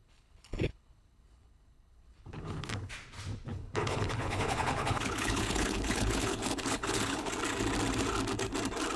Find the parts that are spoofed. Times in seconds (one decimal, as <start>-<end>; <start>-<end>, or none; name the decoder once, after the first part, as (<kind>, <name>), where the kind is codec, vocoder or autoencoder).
0.0-2.9 (codec, HILCodec); 3.5-7.3